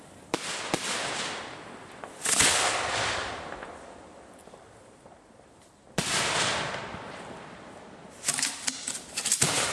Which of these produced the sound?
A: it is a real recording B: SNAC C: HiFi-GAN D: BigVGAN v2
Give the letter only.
D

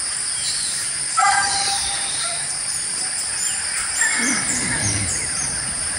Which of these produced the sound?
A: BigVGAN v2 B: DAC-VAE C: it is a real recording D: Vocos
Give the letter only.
A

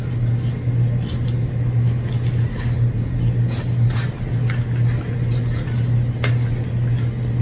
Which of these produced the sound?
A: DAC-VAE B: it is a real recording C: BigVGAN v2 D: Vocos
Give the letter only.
B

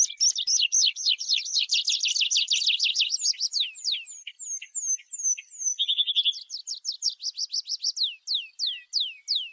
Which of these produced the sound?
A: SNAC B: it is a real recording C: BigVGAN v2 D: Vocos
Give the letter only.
B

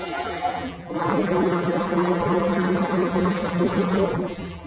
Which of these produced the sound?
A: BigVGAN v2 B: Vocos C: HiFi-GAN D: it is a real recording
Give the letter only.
A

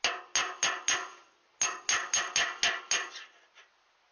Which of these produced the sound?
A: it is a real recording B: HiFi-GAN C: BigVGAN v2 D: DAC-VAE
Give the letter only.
A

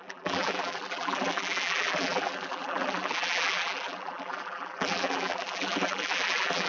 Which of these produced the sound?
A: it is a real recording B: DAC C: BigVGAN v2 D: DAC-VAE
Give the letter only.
C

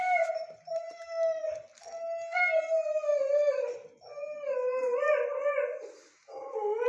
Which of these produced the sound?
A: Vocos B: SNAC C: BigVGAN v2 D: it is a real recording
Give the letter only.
D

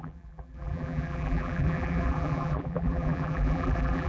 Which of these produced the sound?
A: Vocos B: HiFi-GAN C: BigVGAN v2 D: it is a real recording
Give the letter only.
C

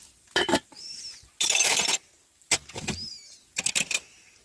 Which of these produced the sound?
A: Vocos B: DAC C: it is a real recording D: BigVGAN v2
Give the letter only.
C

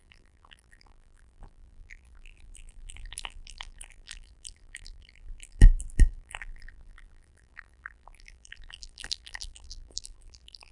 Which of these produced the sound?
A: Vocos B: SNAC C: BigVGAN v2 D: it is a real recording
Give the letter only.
C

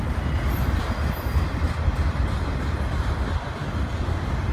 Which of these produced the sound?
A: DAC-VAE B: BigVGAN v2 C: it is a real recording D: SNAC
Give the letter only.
C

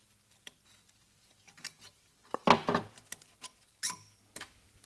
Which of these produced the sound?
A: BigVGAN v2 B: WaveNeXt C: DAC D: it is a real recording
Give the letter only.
D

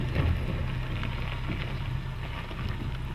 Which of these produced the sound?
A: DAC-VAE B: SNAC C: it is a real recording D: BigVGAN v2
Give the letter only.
C